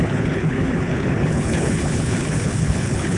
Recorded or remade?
remade